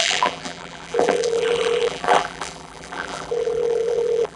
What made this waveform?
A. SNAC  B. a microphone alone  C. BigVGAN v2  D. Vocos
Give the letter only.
C